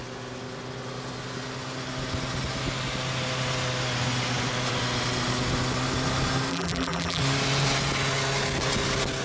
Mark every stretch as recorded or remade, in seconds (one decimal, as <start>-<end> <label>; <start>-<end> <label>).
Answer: 0.0-6.5 recorded; 6.5-7.2 remade; 7.2-9.2 recorded